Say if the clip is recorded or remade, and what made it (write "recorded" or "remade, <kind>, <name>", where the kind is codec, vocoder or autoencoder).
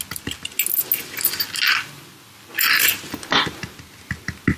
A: recorded